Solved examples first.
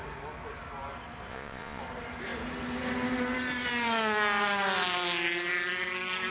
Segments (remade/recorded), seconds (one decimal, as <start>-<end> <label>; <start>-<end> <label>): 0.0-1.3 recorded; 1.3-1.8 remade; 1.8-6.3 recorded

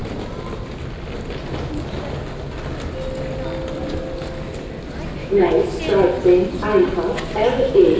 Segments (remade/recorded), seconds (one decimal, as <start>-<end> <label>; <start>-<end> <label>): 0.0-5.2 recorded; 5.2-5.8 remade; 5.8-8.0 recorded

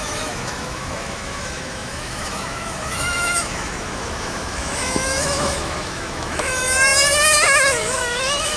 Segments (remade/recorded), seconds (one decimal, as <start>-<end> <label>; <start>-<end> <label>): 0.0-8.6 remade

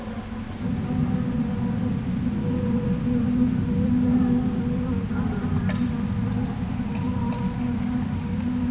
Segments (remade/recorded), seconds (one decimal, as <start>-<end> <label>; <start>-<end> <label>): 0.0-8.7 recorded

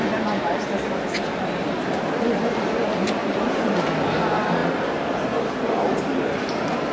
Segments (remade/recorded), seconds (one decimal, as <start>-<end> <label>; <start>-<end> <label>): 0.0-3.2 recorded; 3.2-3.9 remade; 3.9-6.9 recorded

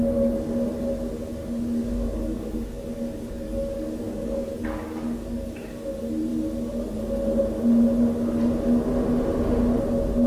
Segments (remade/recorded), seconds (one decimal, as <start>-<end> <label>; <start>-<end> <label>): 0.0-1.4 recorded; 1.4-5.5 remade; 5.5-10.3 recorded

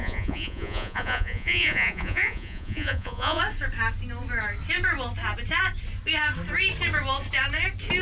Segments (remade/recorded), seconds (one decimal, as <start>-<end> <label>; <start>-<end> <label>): 0.0-3.4 remade; 3.4-8.0 recorded